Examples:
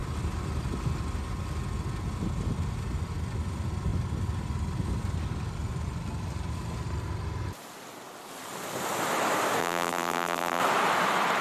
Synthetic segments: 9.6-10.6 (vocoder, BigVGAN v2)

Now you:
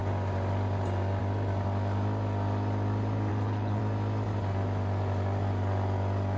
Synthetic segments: 3.3-3.8 (codec, HILCodec)

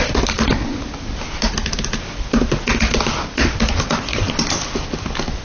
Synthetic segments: none

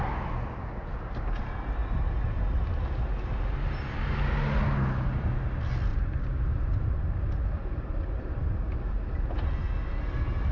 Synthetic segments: 5.9-8.3 (vocoder, BigVGAN v2)

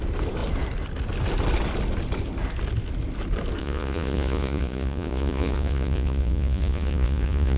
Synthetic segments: 3.6-7.6 (vocoder, Vocos)